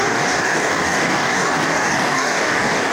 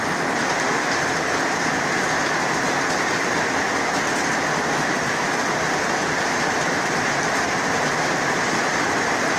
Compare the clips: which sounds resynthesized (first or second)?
first